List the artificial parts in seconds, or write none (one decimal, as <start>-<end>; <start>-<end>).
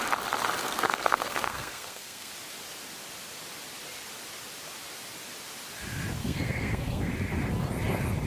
0.6-2.3; 6.2-7.1